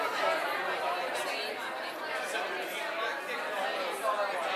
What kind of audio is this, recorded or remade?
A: recorded